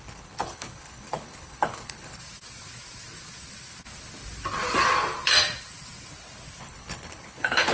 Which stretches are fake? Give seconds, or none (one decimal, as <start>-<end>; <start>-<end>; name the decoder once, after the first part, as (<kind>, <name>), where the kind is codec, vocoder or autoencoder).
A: 0.0-2.2 (codec, HILCodec); 6.6-7.7